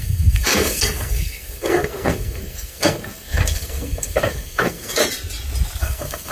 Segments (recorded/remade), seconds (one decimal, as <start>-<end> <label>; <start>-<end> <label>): 0.0-5.0 remade; 5.0-5.8 recorded; 5.8-6.3 remade